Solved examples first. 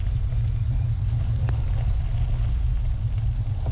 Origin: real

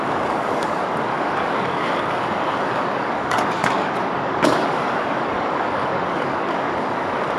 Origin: fake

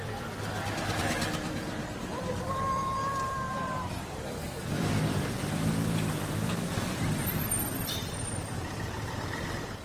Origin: fake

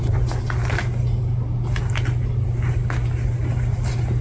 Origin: real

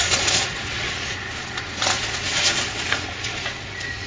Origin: fake